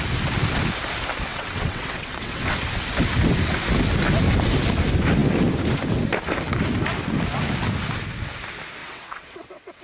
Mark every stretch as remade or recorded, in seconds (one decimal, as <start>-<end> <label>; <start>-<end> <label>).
0.0-1.3 recorded; 1.3-2.6 remade; 2.6-8.8 recorded; 8.8-9.8 remade